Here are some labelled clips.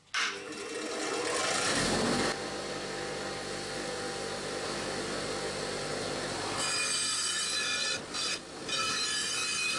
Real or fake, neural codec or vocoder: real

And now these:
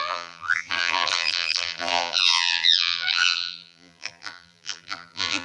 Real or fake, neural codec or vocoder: fake, vocoder, BigVGAN v2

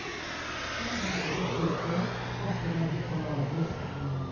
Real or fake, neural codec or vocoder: real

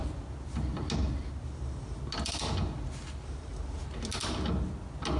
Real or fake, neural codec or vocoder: real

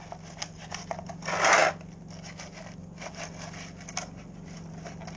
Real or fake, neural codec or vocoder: real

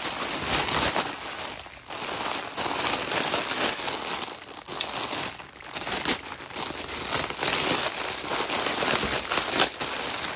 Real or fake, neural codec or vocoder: real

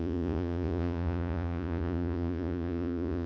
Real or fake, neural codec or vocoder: fake, vocoder, Vocos